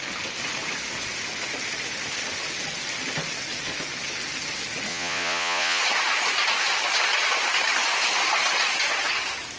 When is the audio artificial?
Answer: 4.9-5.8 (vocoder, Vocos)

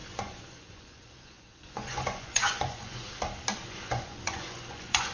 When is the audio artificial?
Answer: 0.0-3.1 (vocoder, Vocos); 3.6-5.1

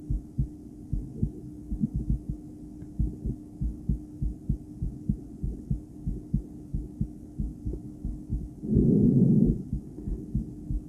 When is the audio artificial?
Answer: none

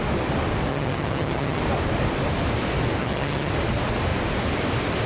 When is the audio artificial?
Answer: 0.7-1.6 (vocoder, HiFi-GAN); 3.0-3.5